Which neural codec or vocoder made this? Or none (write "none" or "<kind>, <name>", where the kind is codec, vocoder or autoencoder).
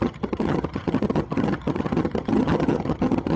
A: vocoder, HiFi-GAN